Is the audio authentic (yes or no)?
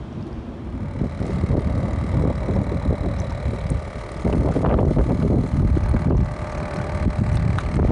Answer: yes